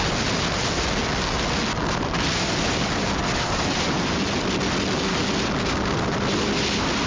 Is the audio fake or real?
real